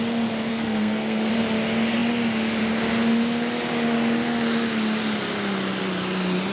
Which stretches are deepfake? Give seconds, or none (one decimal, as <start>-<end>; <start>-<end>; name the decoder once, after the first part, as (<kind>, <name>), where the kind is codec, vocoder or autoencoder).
0.5-1.3 (codec, SNAC)